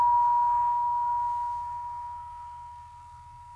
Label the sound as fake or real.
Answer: fake